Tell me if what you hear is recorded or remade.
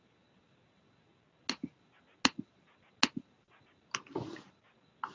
recorded